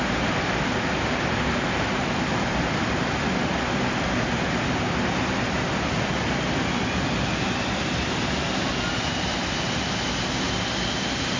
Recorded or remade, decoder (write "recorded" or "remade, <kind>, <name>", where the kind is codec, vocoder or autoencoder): recorded